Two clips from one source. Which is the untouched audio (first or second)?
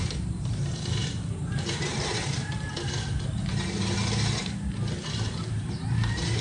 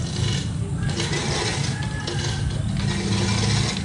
second